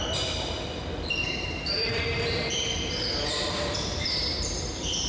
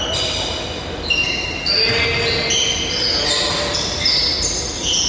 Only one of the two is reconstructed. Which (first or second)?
first